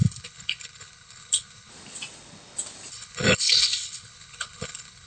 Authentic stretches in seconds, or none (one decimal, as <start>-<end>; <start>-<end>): 1.7-2.9

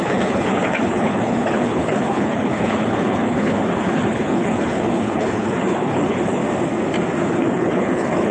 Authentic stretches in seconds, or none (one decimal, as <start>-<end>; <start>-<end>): 6.4-7.2

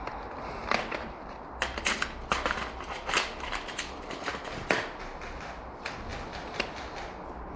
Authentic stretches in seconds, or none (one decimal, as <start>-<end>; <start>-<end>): 0.0-7.6